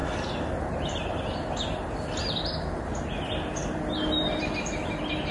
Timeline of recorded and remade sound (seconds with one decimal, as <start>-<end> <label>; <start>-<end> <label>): 0.0-5.3 recorded